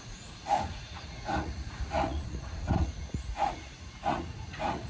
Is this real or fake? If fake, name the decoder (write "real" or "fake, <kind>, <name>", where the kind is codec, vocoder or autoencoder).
fake, vocoder, Vocos